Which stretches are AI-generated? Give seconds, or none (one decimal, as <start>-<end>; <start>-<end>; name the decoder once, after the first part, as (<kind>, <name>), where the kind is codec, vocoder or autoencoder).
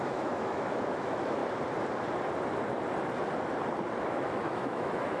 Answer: 0.0-1.4 (autoencoder, DAC-VAE); 4.0-5.2